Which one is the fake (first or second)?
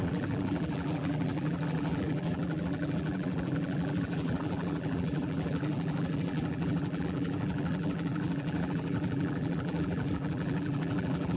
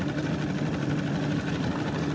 first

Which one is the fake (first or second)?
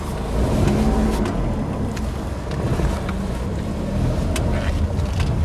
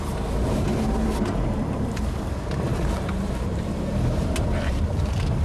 second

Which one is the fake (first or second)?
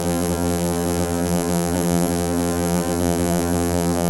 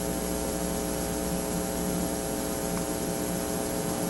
first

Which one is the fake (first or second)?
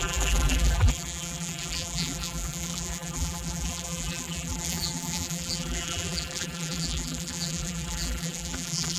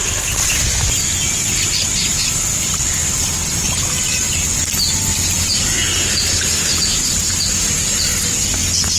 first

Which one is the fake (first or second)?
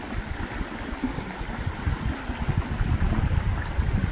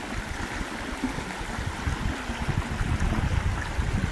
first